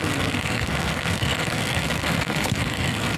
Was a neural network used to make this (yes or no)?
yes